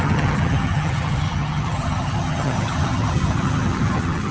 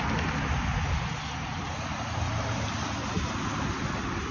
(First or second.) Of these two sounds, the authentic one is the second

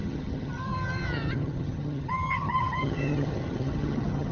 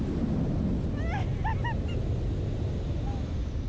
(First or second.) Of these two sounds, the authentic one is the second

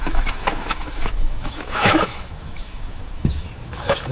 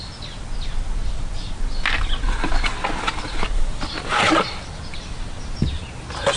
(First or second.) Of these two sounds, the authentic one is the second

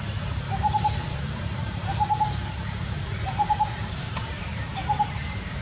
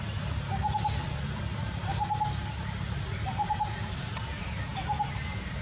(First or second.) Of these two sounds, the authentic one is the second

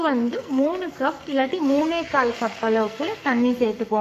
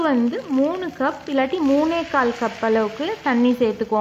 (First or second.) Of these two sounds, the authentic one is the second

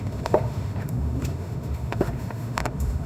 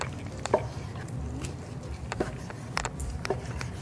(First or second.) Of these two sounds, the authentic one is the second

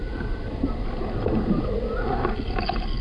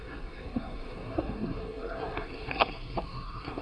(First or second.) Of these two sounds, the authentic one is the first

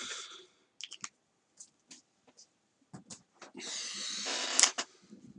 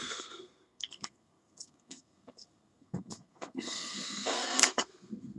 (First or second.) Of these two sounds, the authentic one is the first